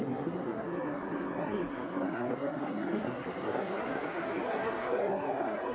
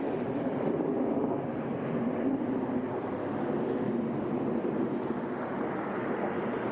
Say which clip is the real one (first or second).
second